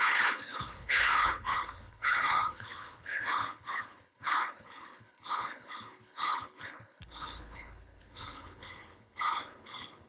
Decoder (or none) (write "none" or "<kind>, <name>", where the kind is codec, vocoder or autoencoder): codec, HILCodec